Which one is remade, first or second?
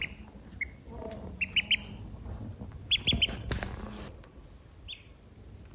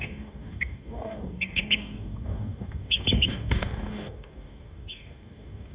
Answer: second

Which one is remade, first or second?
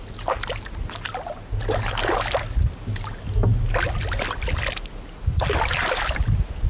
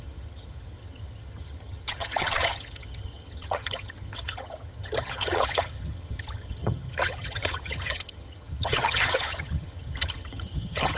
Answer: second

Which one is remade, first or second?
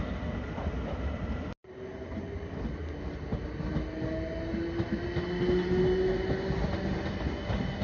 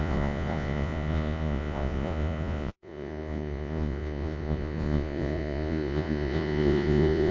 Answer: second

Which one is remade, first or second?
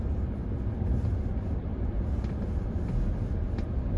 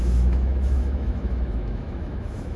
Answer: second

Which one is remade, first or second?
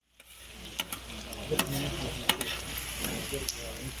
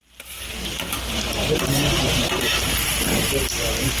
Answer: second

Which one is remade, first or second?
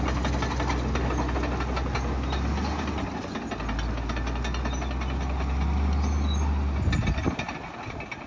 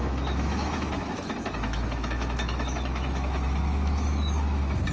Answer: second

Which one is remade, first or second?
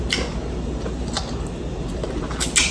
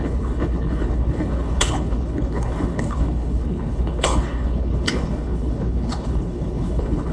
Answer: second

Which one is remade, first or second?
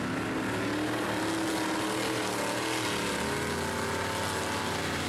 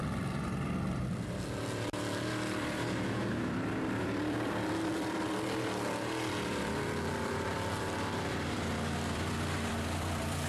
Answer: second